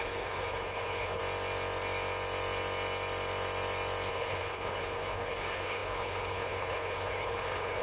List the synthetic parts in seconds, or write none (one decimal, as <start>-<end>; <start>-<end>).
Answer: 0.0-1.2; 4.1-7.8